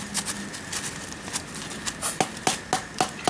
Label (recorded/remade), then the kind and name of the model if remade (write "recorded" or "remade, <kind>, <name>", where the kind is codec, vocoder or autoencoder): recorded